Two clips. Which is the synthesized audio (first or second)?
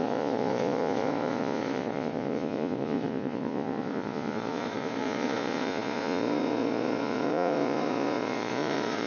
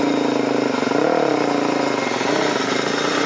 first